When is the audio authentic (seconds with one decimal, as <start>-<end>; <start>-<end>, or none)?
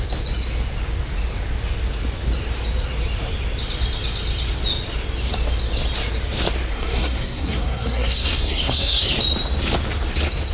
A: 0.0-6.7; 9.1-10.5